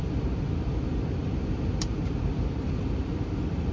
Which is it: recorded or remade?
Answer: recorded